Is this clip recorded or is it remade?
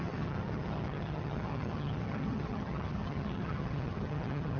remade